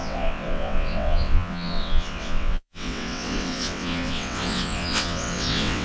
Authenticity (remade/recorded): remade